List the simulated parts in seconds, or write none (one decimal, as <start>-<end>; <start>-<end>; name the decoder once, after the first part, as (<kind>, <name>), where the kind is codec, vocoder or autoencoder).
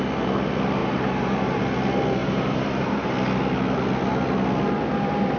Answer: 0.8-1.6 (vocoder, BigVGAN v2); 2.2-3.1